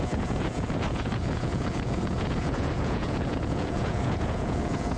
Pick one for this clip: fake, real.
fake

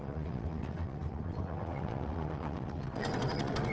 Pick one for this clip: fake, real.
fake